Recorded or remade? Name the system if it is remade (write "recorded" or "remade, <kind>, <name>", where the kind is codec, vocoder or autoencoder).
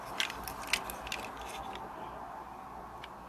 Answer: recorded